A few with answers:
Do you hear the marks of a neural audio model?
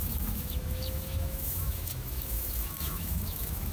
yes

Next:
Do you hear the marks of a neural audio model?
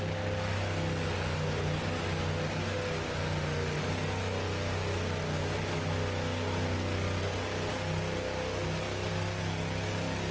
no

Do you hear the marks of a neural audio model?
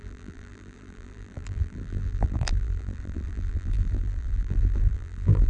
yes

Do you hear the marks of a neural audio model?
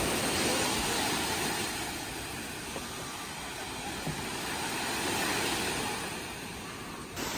no